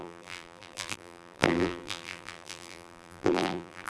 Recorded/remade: remade